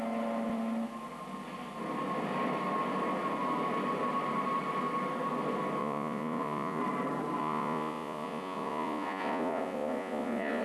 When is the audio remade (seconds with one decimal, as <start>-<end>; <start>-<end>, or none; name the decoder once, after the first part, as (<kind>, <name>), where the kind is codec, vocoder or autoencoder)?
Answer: 5.8-6.8 (vocoder, Vocos); 7.4-10.6